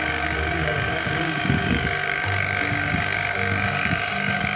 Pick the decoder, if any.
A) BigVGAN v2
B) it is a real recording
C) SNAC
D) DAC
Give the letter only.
D